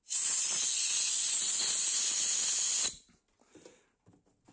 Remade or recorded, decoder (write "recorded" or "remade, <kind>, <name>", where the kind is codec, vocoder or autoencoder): recorded